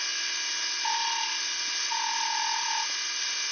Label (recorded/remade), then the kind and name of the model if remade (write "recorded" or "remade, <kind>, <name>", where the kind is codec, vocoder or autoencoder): recorded